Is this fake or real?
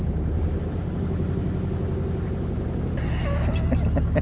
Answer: real